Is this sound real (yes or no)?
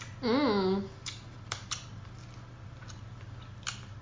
yes